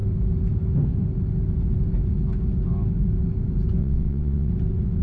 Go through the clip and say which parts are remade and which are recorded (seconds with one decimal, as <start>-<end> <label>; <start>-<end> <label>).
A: 0.0-3.8 recorded; 3.8-4.5 remade; 4.5-5.0 recorded